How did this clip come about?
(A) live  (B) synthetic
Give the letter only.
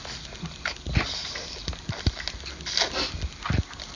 A